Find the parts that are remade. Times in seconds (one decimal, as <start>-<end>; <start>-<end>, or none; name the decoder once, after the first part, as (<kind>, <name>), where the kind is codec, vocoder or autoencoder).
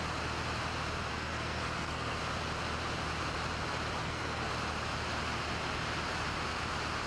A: 1.1-2.2 (codec, SNAC); 4.0-4.5